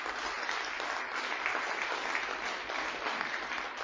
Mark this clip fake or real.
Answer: real